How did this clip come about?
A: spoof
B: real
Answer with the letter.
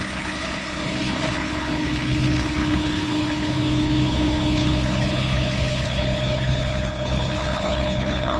A